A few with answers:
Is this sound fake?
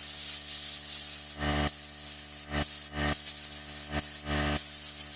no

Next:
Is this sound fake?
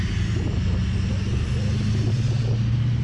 no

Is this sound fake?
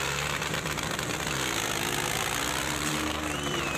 yes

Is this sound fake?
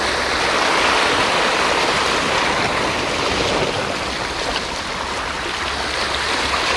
no